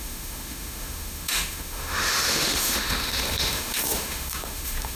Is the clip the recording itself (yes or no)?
no